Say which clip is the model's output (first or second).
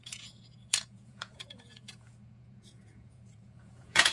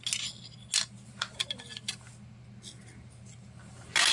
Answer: first